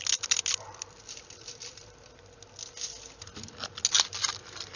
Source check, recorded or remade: recorded